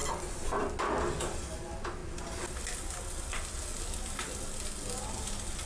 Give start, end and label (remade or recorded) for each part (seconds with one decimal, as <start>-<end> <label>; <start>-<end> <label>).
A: 0.0-5.7 recorded